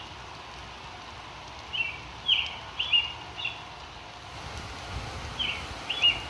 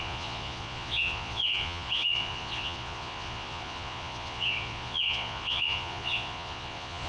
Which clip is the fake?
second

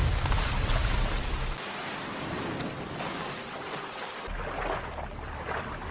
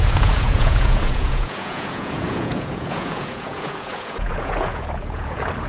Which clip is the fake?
second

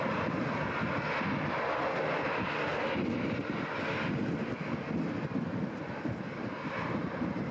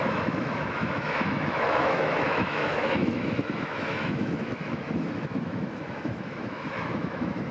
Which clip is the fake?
second